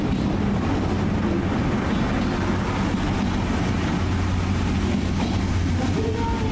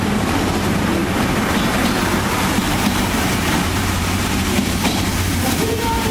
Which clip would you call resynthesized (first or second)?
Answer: second